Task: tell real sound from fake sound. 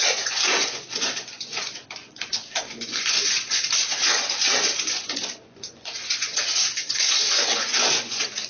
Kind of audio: fake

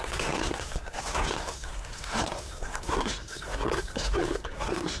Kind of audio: fake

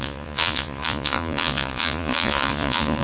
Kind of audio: fake